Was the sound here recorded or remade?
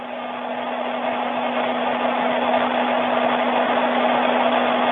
recorded